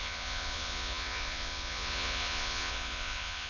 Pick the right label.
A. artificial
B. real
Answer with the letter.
A